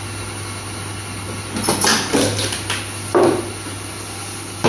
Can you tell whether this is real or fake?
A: real